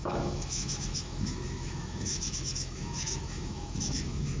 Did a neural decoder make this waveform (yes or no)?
yes